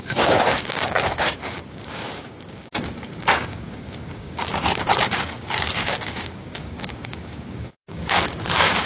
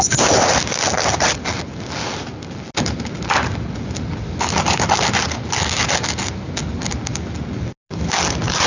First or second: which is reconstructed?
first